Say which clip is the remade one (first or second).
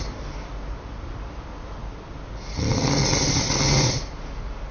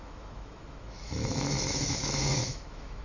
second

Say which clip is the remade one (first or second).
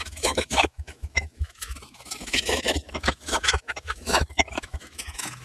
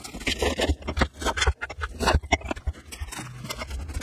first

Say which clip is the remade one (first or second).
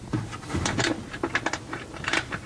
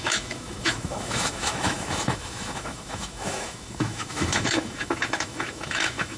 second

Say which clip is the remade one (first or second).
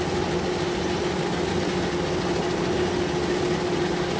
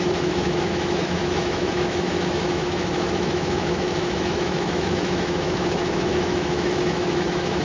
second